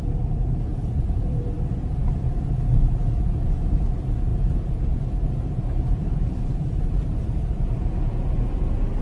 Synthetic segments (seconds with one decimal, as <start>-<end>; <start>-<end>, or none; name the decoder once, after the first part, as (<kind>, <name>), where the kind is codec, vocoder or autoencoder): 0.7-1.4 (vocoder, BigVGAN v2); 4.3-7.5